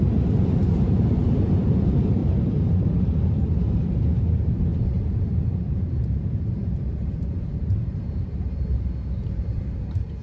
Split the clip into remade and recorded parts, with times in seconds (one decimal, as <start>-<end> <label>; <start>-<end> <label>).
0.0-10.2 remade